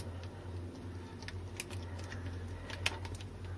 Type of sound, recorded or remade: recorded